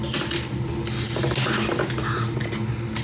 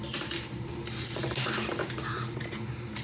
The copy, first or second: second